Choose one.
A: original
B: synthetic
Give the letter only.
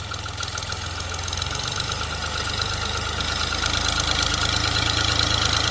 A